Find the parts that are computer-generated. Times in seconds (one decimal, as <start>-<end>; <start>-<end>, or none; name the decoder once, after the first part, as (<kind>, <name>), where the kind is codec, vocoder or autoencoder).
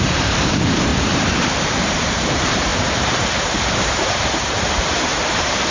0.0-5.7 (vocoder, BigVGAN v2)